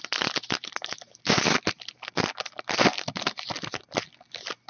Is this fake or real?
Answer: real